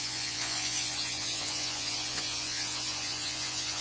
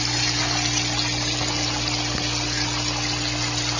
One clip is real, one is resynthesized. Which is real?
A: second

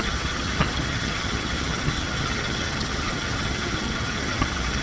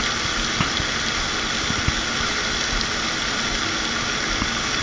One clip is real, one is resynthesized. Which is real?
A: second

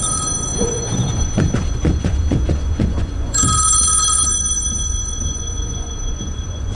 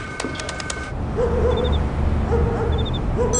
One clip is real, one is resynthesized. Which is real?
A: second